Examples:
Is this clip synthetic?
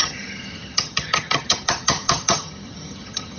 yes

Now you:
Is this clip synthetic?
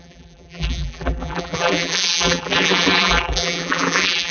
yes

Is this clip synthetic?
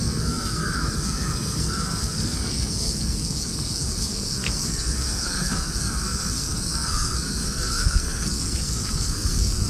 yes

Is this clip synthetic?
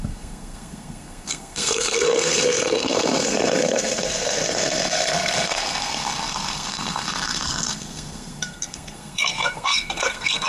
yes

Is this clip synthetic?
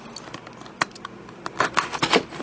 no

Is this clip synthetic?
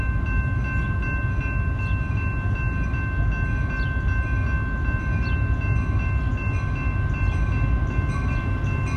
no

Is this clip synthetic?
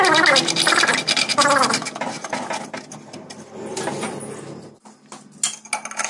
no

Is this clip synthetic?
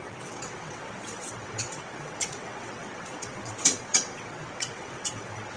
yes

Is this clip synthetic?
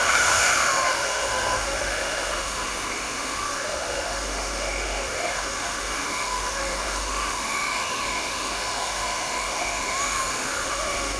yes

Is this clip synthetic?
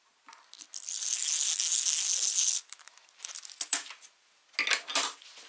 no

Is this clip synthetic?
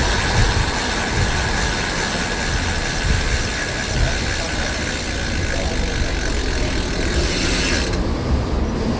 no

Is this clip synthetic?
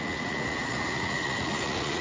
yes